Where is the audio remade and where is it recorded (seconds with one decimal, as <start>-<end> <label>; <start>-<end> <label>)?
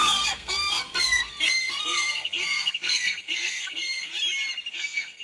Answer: 0.0-4.1 remade; 4.1-4.7 recorded; 4.7-5.2 remade